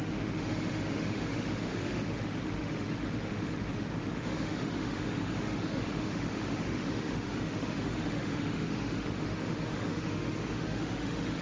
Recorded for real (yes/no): no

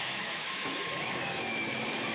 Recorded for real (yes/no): no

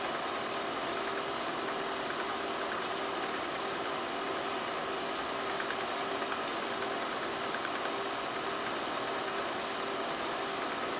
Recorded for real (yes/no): yes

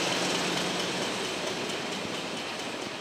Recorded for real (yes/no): yes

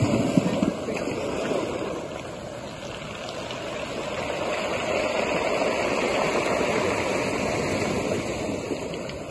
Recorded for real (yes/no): yes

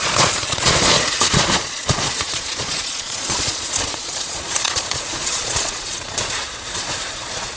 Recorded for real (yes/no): no